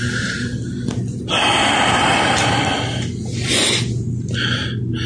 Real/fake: real